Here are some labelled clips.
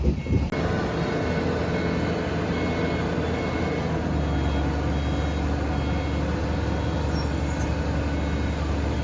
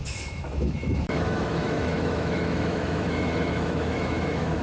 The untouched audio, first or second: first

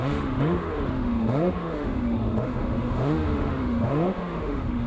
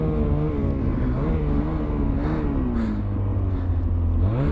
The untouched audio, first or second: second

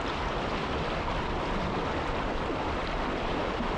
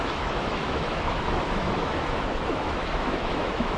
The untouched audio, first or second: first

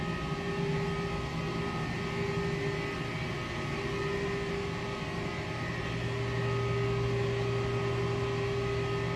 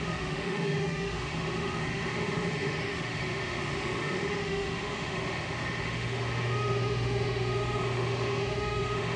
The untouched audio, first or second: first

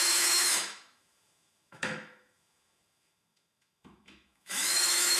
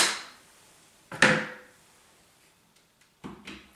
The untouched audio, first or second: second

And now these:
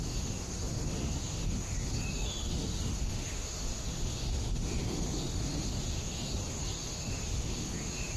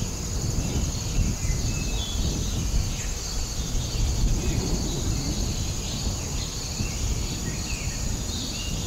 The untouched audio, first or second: second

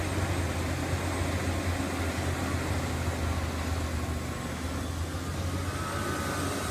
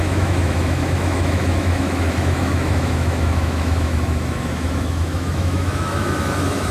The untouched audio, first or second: first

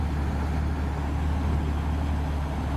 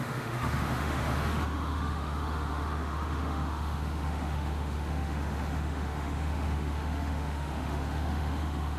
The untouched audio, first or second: first